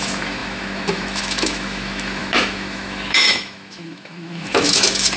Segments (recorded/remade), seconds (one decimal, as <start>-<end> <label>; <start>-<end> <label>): 0.0-5.2 remade